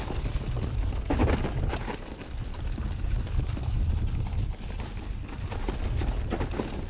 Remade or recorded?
recorded